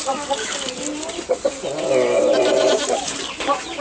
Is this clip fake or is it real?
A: real